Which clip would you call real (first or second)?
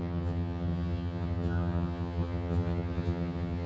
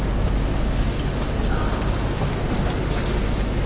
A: second